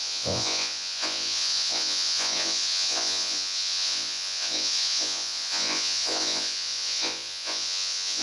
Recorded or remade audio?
remade